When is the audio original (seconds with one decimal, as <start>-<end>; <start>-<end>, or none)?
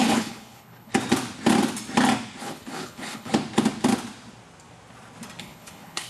0.9-2.4; 3.3-5.4